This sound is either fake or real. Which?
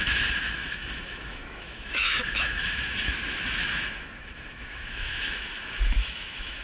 fake